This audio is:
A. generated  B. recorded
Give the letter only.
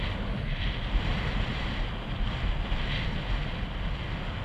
B